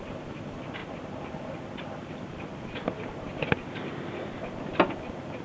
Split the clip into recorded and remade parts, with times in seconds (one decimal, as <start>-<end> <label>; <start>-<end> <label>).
0.0-0.8 remade; 0.8-1.8 recorded; 1.8-5.4 remade